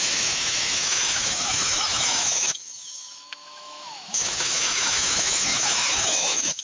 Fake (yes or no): yes